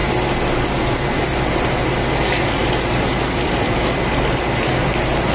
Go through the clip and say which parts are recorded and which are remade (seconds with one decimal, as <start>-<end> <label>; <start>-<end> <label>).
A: 0.0-1.4 recorded; 1.4-5.3 remade